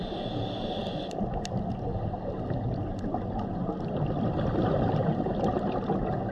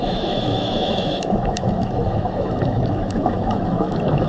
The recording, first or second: first